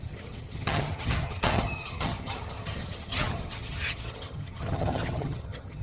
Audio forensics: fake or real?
fake